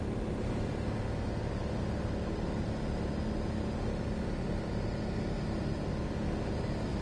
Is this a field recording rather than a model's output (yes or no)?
yes